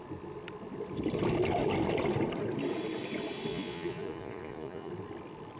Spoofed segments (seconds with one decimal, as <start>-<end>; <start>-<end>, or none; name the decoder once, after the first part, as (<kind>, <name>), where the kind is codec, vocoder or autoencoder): 3.5-4.9 (vocoder, Vocos)